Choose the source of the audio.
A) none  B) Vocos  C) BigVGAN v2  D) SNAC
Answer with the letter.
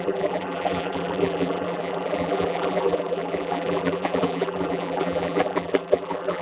C